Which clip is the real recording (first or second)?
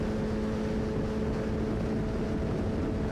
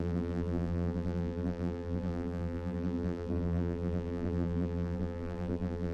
first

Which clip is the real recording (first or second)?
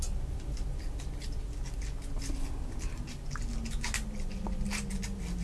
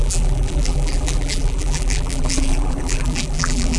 first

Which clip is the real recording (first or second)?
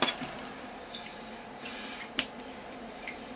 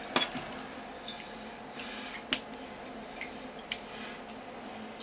second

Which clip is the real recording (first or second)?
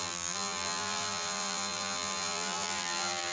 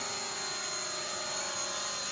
second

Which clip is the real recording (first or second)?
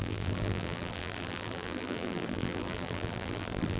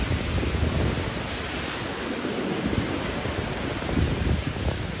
second